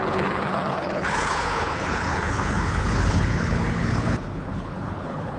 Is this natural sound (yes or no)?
no